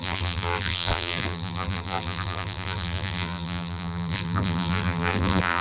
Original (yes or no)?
no